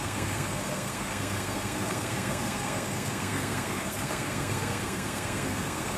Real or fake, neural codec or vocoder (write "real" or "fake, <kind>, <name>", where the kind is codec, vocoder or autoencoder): fake, codec, SNAC